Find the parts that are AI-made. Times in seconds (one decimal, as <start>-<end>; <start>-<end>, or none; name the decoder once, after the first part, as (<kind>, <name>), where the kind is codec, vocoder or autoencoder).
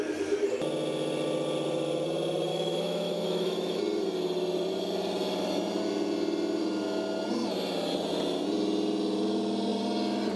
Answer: 2.5-3.8 (autoencoder, DAC-VAE)